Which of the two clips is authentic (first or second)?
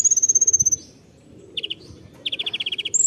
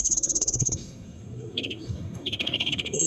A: first